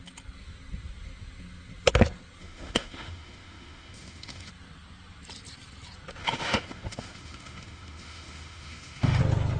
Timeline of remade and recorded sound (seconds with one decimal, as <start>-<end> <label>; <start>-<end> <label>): 0.0-2.4 recorded; 2.4-4.5 remade; 4.5-6.2 recorded; 6.2-9.2 remade; 9.2-9.6 recorded